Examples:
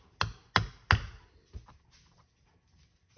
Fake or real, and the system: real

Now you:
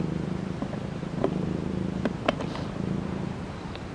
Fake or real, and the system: real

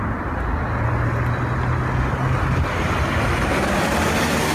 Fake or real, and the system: real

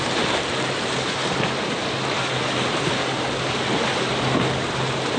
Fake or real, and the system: real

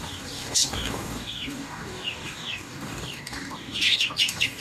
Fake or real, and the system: fake, codec, DAC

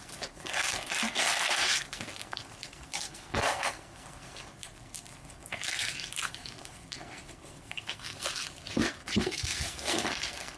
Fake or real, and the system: fake, codec, SNAC